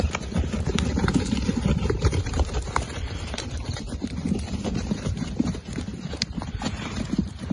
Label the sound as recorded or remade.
remade